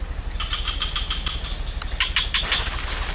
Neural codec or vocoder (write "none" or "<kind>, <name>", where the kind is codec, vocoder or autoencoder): none